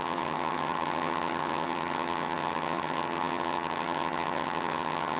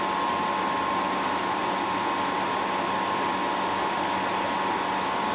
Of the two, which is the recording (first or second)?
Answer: second